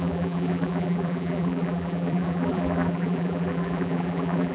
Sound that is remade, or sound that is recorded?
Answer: remade